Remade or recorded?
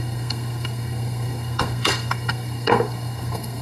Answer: remade